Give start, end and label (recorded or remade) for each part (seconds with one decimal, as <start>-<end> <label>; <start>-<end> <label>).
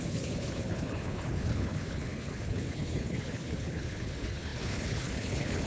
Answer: 0.0-5.7 remade